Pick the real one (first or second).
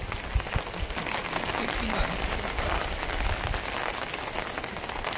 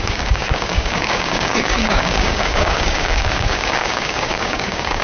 first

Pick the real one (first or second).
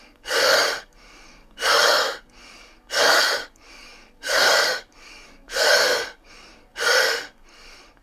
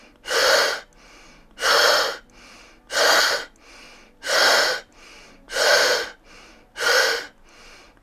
second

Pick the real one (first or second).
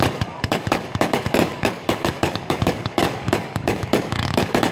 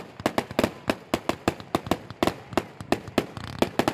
second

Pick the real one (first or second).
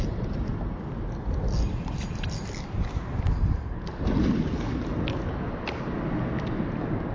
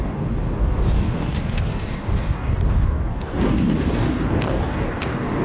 first